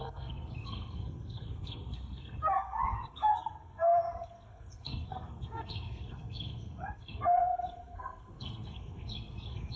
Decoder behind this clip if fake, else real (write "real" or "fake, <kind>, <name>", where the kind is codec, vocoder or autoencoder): fake, codec, SNAC